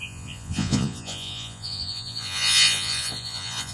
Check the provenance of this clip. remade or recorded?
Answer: remade